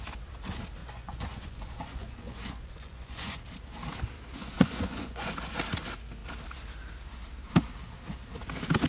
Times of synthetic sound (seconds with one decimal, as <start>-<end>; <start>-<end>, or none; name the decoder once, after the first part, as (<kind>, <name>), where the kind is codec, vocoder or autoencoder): 0.8-3.4 (vocoder, Vocos); 4.4-5.3